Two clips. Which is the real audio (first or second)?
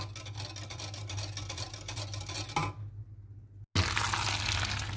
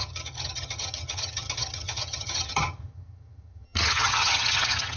first